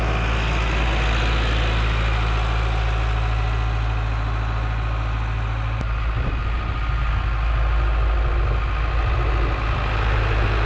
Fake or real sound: real